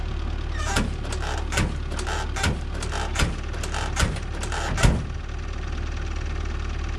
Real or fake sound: real